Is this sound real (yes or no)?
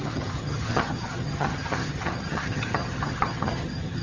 no